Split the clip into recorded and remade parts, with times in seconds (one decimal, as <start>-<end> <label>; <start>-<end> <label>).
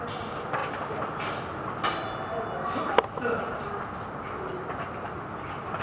0.0-5.8 recorded